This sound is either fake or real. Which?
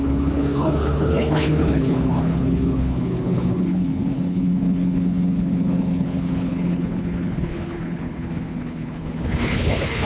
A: fake